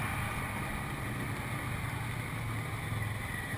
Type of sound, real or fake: real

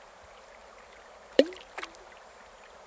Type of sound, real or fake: fake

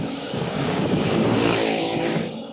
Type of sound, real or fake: fake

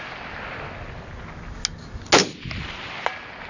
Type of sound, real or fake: real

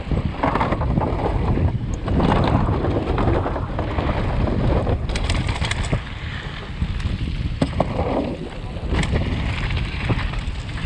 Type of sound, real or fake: real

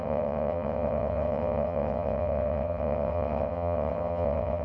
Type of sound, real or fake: fake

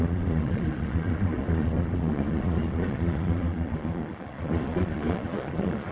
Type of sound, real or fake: fake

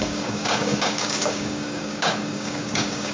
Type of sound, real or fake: fake